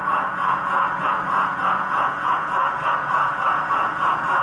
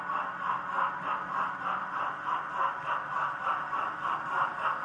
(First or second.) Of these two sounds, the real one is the second